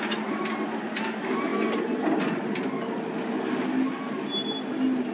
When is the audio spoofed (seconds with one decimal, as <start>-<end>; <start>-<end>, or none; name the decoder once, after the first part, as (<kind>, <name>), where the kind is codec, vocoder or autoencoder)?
none